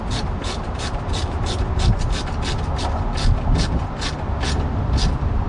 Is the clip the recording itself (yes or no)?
yes